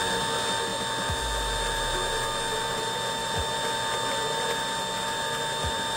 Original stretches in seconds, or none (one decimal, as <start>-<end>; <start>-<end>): 0.0-6.0

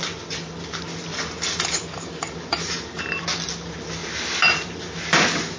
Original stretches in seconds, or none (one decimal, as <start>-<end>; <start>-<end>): 0.0-1.1; 3.0-5.6

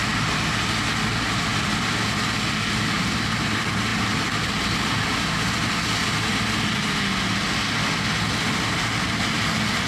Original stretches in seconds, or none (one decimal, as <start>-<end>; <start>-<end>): 0.0-9.9

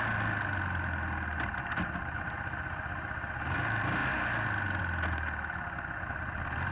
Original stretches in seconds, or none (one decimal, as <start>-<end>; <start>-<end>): 0.0-6.7